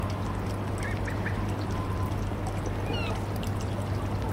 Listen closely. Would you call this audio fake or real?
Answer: real